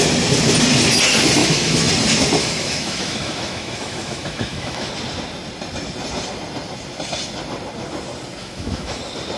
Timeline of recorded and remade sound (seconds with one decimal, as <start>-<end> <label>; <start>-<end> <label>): 0.0-1.4 recorded; 1.4-1.9 remade; 1.9-2.4 recorded; 2.4-4.9 remade; 4.9-8.4 recorded; 8.4-9.0 remade; 9.0-9.4 recorded